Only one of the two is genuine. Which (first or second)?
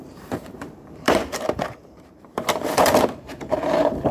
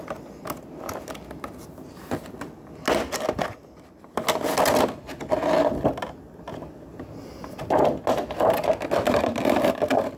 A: second